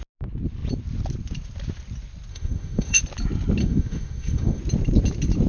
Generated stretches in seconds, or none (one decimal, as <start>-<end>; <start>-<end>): 2.3-3.0; 3.6-4.6